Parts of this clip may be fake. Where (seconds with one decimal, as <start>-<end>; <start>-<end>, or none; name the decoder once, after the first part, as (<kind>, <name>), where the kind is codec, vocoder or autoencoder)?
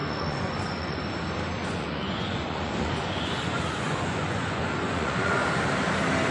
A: 0.0-1.0 (vocoder, Vocos); 1.6-5.4